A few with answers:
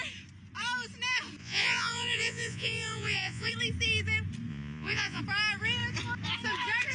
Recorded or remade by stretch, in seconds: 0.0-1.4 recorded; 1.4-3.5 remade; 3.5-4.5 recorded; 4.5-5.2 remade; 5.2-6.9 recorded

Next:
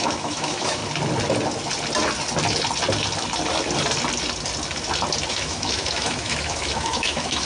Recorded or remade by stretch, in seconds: 0.0-0.8 remade; 0.8-5.3 recorded; 5.3-7.5 remade

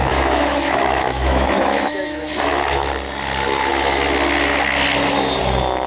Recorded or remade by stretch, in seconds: 0.0-2.9 remade; 2.9-5.9 recorded

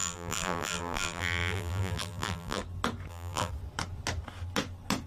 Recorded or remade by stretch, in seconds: 0.0-2.6 remade; 2.6-3.1 recorded; 3.1-3.5 remade; 3.5-5.1 recorded

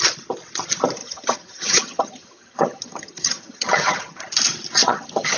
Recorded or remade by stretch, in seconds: 0.0-1.0 recorded; 1.0-4.2 remade; 4.2-4.8 recorded; 4.8-5.4 remade

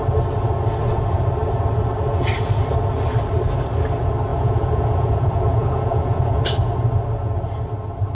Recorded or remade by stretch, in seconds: 0.0-4.3 recorded; 4.3-6.4 remade; 6.4-8.1 recorded